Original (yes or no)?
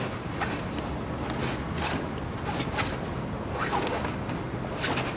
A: yes